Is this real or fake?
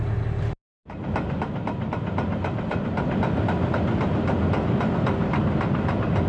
real